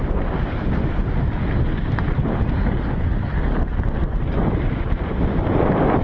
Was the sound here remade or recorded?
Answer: recorded